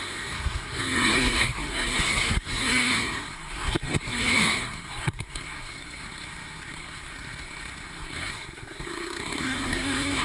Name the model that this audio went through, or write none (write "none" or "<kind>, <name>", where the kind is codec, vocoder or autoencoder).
codec, SNAC